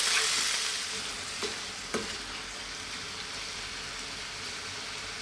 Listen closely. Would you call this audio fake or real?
real